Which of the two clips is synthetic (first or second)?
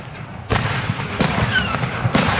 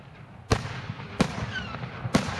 first